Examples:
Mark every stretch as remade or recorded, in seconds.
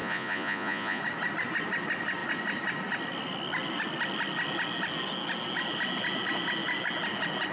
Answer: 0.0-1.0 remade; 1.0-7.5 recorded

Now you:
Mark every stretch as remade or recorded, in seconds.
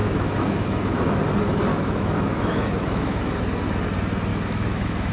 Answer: 0.0-1.0 remade; 1.0-1.7 recorded; 1.7-3.4 remade; 3.4-4.3 recorded; 4.3-5.1 remade